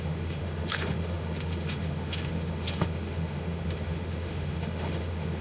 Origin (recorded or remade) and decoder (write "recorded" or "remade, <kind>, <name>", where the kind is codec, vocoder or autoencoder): remade, autoencoder, DAC-VAE